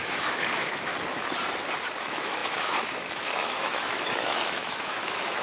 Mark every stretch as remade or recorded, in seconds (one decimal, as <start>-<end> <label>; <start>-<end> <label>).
0.0-0.9 remade; 0.9-2.0 recorded; 2.0-5.4 remade

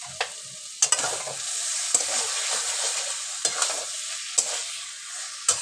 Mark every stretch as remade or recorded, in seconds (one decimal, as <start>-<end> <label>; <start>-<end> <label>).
0.0-5.6 recorded

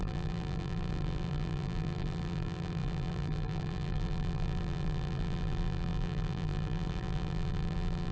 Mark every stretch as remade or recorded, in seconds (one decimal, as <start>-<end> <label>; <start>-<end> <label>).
0.0-8.1 remade

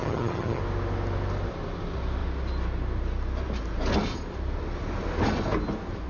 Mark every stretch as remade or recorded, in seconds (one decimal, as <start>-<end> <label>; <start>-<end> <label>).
0.0-0.6 remade; 0.6-6.1 recorded

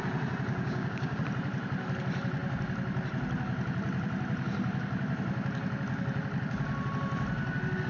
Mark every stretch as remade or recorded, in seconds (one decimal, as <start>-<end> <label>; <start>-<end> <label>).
0.0-0.5 recorded; 0.5-1.2 remade; 1.2-7.9 recorded

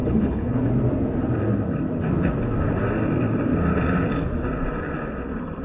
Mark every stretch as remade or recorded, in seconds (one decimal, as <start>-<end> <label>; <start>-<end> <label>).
0.0-0.7 remade; 0.7-5.6 recorded

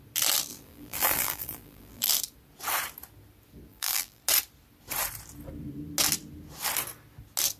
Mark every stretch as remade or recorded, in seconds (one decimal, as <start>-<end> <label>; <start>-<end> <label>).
0.0-0.5 recorded; 0.5-2.1 remade; 2.1-3.7 recorded; 3.7-4.2 remade; 4.2-7.6 recorded